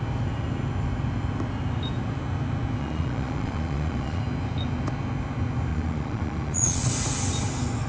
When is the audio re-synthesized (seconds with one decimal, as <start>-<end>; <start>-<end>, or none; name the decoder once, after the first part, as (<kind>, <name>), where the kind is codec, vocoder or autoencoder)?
2.8-4.2 (vocoder, Vocos); 5.7-6.9